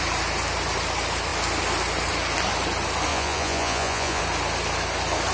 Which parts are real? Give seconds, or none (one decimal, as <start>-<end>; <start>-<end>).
0.0-3.1; 4.2-5.3